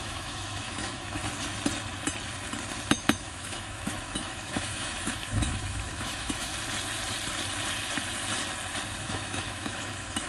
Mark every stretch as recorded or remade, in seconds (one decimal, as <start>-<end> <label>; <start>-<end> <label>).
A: 0.0-1.2 remade; 1.2-2.9 recorded; 2.9-6.5 remade; 6.5-9.0 recorded; 9.0-10.3 remade

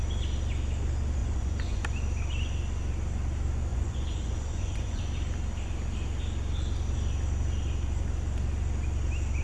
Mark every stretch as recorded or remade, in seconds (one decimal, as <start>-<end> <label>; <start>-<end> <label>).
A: 0.0-1.2 recorded; 1.2-1.8 remade; 1.8-3.7 recorded; 3.7-5.0 remade; 5.0-9.4 recorded